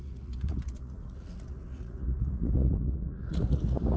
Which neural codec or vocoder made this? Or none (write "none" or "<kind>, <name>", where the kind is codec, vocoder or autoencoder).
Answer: vocoder, Vocos